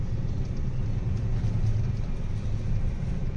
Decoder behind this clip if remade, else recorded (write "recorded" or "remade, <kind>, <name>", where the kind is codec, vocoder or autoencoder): recorded